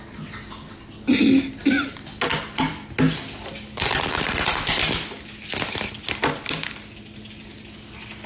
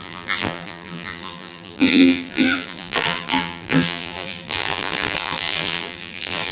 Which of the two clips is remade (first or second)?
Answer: second